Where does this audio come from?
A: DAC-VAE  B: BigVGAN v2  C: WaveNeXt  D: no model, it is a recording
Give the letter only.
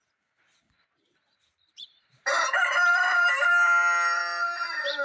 B